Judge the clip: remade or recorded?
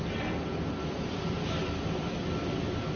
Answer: recorded